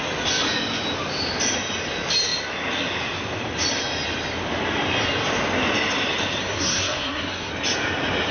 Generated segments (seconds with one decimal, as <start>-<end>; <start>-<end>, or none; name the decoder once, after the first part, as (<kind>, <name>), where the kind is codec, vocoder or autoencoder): 6.4-7.5 (codec, SNAC)